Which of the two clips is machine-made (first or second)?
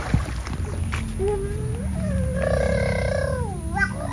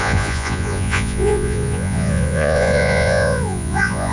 second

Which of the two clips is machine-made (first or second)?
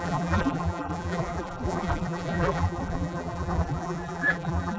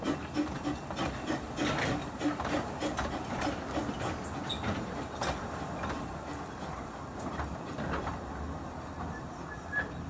first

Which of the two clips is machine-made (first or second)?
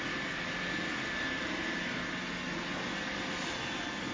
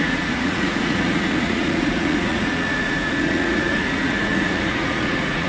second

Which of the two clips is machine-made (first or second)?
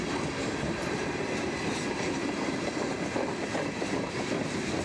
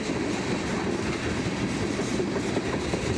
first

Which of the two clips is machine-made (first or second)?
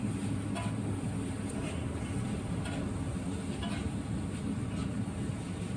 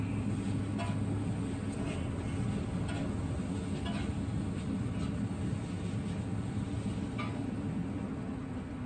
first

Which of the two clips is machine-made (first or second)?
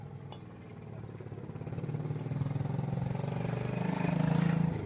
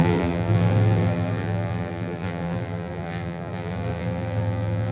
second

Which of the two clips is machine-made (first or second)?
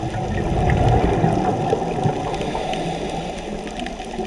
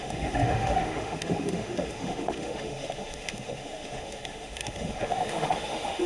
second